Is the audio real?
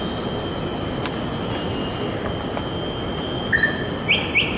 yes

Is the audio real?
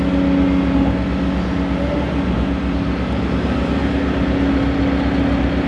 yes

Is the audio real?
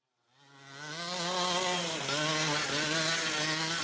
yes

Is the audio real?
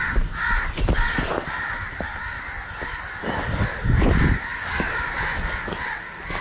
yes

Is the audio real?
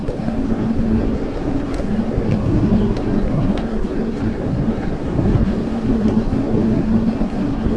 no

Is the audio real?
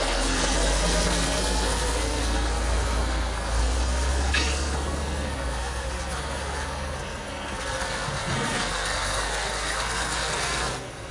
no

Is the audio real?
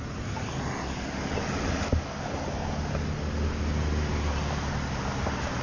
yes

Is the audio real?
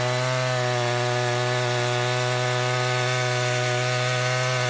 yes